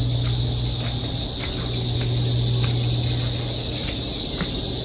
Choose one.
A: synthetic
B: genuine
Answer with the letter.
B